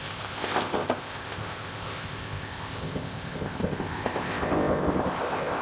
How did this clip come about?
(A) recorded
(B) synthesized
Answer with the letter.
B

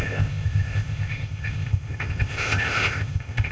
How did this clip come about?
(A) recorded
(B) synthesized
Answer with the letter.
B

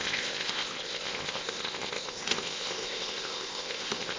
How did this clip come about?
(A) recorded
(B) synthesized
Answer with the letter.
B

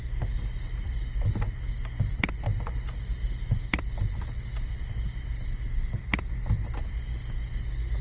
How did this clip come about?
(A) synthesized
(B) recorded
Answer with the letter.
B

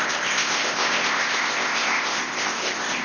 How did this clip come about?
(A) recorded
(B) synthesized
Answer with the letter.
B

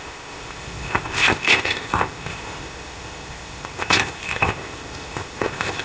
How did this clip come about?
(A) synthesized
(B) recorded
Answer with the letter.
A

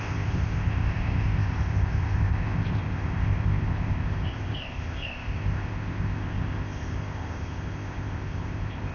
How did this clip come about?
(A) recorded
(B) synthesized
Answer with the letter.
B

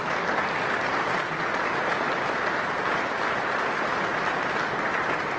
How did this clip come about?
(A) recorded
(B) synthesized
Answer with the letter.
A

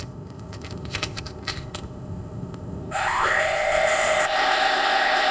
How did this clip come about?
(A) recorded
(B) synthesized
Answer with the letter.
B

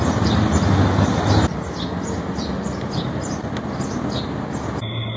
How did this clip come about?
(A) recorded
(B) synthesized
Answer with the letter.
A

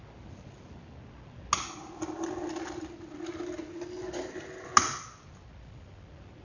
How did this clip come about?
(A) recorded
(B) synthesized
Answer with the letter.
A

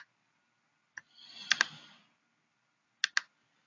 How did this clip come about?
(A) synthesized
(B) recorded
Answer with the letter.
B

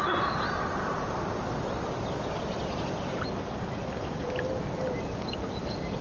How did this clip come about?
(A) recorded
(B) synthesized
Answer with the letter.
A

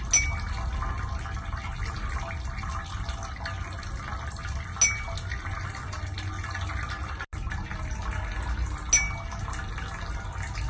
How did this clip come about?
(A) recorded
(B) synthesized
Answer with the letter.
A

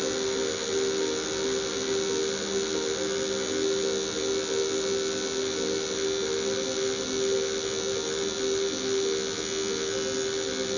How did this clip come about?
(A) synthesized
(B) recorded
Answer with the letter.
B